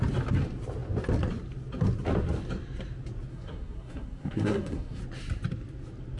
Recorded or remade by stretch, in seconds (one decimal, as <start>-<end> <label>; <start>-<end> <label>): 0.0-3.3 recorded; 3.3-5.0 remade; 5.0-6.2 recorded